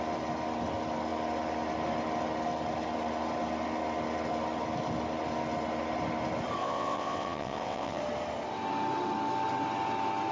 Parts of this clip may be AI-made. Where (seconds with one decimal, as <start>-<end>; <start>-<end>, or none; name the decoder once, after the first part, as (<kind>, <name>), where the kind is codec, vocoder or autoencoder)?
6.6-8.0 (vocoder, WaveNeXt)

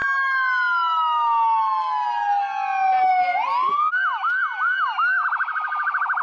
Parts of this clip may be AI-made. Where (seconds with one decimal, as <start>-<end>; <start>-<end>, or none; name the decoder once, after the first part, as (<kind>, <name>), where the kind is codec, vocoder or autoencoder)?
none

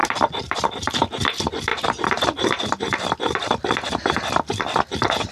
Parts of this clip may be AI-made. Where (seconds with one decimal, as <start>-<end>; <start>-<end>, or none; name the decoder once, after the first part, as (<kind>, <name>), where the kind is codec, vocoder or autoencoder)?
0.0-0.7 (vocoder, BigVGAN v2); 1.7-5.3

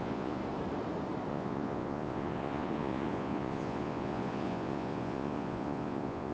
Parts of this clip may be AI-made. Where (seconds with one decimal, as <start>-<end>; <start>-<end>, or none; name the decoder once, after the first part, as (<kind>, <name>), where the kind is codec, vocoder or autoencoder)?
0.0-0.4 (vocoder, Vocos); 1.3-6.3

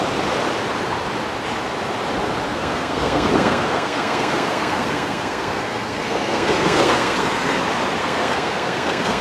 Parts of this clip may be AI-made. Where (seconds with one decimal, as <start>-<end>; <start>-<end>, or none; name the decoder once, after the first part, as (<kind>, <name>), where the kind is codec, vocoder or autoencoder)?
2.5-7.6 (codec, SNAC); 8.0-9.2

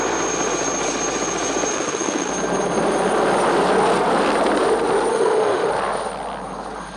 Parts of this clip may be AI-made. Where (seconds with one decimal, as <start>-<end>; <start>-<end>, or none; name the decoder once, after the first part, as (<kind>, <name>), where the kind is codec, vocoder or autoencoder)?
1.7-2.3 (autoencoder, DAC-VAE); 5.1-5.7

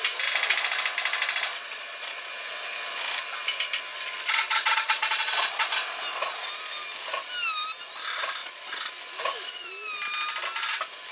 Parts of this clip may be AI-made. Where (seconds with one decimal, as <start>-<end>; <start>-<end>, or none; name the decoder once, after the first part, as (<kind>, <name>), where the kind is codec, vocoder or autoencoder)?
1.5-2.3 (vocoder, Vocos); 3.9-5.7; 8.4-8.9

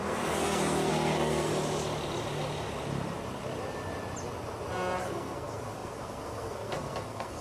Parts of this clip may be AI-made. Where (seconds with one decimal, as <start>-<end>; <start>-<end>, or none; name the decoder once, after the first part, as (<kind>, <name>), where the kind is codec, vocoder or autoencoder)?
0.0-1.5 (codec, SNAC); 5.0-7.4